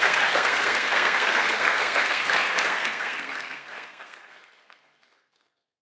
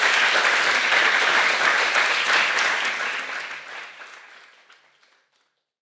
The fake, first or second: first